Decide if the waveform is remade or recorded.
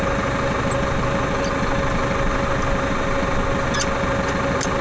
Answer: recorded